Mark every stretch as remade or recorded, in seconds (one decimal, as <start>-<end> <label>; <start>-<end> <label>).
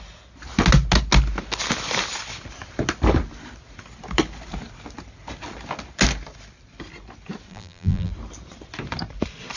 0.0-7.5 recorded; 7.5-8.1 remade; 8.1-9.6 recorded